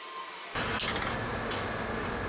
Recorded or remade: recorded